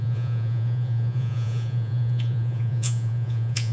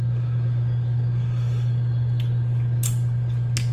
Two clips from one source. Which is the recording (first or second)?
second